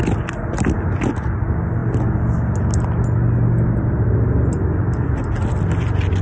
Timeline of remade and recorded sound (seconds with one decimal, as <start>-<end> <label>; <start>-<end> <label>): 0.0-6.2 recorded